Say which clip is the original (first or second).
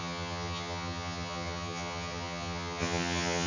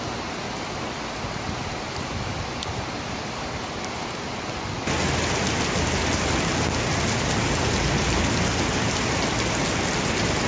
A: second